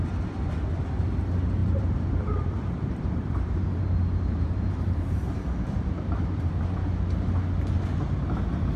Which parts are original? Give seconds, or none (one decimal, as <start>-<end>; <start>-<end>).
0.0-1.6; 6.5-8.8